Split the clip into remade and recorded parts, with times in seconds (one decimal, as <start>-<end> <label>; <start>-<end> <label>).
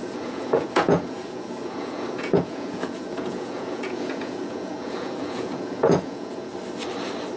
0.0-6.5 remade; 6.5-7.4 recorded